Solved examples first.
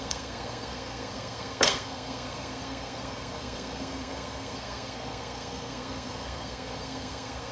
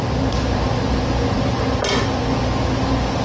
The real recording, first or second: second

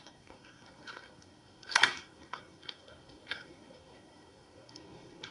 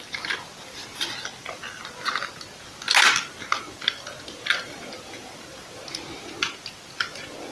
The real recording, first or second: second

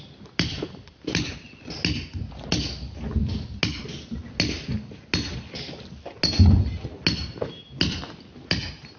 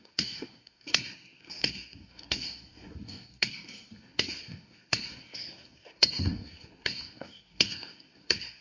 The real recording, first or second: first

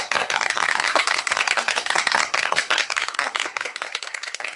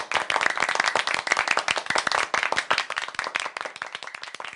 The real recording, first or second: second